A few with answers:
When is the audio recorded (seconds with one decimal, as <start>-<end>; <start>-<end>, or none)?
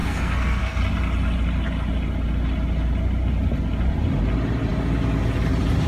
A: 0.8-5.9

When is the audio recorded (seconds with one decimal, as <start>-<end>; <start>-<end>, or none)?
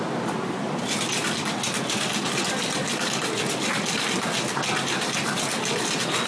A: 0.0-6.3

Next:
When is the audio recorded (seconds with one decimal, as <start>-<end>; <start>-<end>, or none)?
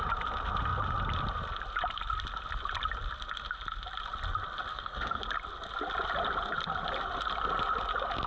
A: 0.0-4.7; 5.2-8.3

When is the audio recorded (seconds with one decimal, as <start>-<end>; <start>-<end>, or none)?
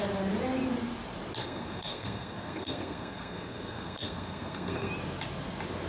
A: 0.0-1.4; 4.9-5.9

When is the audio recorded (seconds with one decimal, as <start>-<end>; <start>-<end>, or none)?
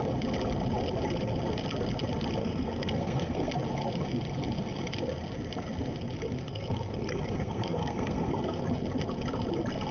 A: 0.0-2.4; 3.5-6.4; 8.6-9.9